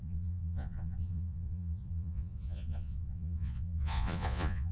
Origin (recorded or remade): remade